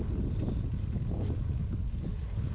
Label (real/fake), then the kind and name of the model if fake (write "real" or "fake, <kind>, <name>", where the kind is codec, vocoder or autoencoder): real